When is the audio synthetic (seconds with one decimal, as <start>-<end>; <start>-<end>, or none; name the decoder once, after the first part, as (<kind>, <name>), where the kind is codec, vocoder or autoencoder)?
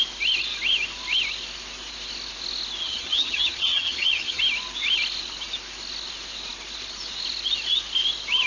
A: 2.8-4.4 (vocoder, HiFi-GAN)